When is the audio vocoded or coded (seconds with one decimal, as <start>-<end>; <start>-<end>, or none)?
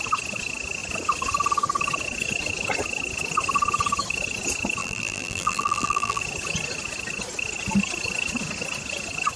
4.8-6.2